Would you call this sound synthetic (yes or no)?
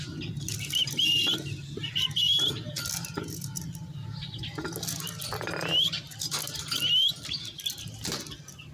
no